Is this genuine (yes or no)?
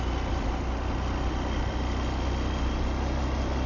yes